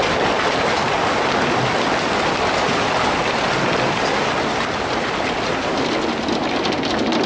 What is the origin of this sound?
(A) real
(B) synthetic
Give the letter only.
A